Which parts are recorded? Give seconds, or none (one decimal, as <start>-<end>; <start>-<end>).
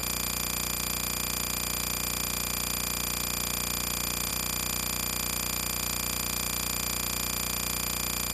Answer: 0.0-8.3